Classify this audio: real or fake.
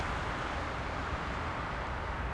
real